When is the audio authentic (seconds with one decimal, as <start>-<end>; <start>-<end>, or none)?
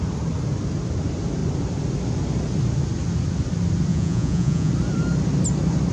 0.0-3.9; 4.7-5.9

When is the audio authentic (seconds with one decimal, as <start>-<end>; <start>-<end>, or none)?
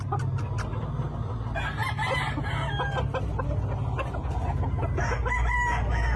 0.0-6.2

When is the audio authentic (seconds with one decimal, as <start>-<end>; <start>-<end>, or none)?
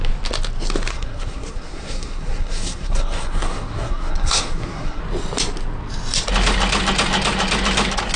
0.0-0.9; 5.0-8.2